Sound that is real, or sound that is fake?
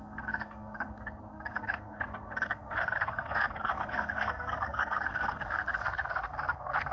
fake